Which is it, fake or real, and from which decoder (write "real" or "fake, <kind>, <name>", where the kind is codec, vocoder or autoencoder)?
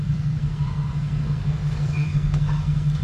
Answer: fake, codec, SNAC